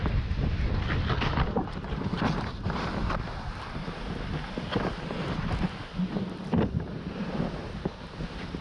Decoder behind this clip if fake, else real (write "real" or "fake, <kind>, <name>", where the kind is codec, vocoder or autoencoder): real